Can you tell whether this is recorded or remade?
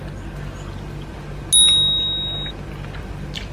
recorded